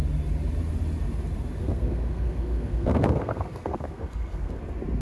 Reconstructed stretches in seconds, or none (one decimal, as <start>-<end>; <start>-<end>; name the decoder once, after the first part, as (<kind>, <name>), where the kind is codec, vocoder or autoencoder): 1.6-4.6 (codec, SNAC)